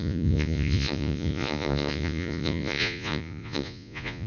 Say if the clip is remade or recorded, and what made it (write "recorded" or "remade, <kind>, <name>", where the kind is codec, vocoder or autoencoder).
remade, vocoder, Vocos